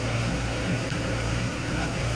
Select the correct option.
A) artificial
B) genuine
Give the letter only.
A